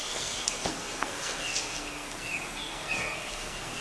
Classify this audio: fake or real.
fake